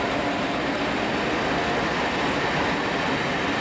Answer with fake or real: real